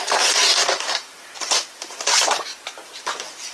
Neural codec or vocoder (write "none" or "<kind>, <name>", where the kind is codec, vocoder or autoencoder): vocoder, BigVGAN v2